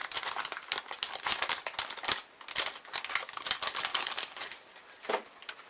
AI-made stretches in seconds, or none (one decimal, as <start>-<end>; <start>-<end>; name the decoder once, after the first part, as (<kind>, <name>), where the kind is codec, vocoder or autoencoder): 3.9-4.5 (codec, DAC)